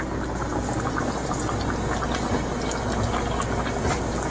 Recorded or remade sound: recorded